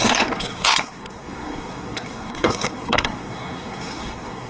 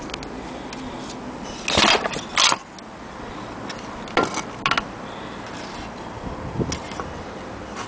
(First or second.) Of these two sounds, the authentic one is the second